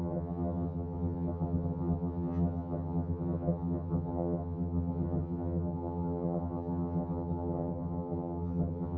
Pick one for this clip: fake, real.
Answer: fake